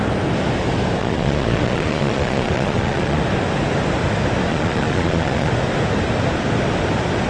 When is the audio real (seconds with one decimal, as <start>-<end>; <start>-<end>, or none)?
0.0-1.0; 3.2-4.5; 5.5-7.3